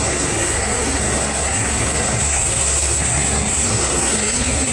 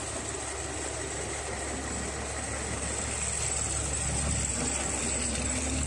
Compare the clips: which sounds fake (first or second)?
first